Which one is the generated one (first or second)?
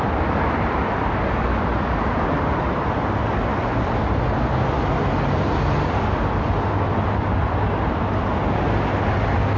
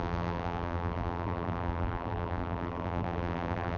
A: second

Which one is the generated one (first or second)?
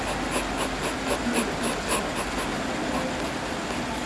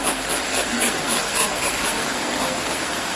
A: second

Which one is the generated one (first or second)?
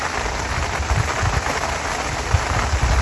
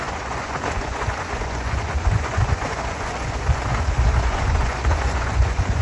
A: second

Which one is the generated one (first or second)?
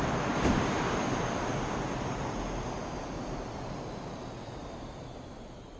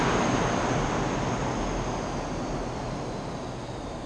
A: first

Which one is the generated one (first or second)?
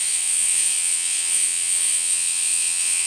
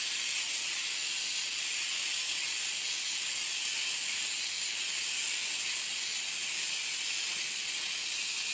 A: first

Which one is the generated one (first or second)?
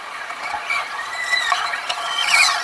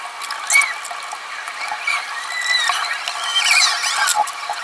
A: first